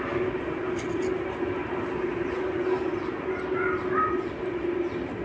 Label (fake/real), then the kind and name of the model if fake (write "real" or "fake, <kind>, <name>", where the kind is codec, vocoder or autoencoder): real